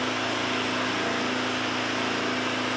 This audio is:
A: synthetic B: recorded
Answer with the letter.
B